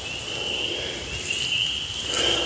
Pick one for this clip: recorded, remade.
recorded